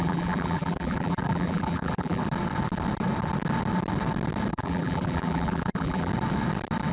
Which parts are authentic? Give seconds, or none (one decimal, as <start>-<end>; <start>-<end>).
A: 2.2-4.5; 6.1-6.9